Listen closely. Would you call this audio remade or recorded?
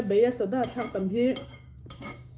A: remade